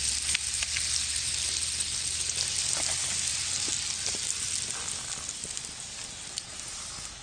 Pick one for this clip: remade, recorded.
recorded